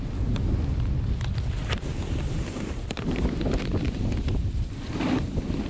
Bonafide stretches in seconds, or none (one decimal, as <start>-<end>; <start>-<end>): 0.0-5.7